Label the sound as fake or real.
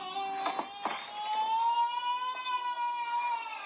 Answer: real